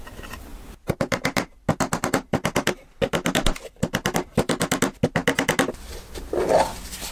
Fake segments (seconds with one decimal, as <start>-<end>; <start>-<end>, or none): none